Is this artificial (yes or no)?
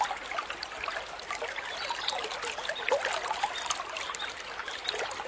no